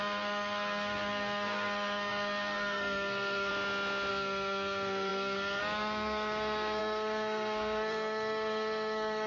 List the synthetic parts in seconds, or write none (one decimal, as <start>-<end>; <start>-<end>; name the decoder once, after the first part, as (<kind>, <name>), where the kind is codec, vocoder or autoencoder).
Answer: 0.0-3.5 (codec, SNAC); 4.1-9.3